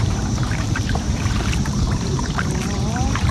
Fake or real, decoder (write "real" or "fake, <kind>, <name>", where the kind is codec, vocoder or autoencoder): fake, vocoder, BigVGAN v2